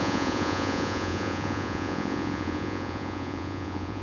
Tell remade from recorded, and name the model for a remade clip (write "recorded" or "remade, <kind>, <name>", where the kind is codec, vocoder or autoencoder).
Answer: remade, vocoder, Vocos